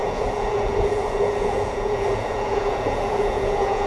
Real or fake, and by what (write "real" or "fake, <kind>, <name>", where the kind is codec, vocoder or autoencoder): fake, vocoder, Vocos